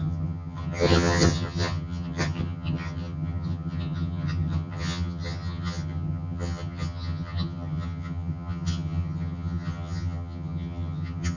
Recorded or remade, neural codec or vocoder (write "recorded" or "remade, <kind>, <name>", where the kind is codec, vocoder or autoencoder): remade, vocoder, HiFi-GAN